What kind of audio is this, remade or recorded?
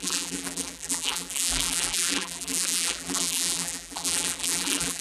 remade